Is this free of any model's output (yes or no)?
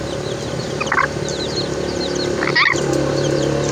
yes